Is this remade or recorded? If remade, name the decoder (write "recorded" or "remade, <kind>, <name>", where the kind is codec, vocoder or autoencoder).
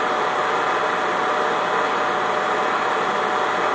recorded